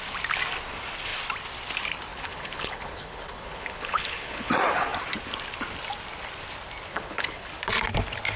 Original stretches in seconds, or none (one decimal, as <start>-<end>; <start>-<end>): 0.0-2.1; 4.5-6.9; 7.5-8.4